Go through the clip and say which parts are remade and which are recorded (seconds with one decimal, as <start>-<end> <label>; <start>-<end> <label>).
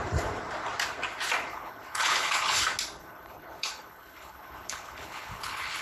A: 0.0-1.5 recorded; 1.5-2.6 remade; 2.6-3.0 recorded; 3.0-5.8 remade